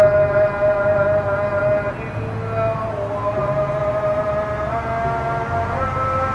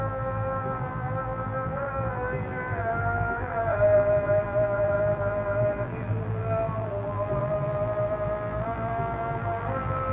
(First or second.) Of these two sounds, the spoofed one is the second